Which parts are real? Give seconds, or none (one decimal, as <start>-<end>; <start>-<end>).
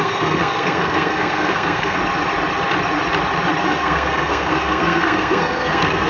2.0-3.6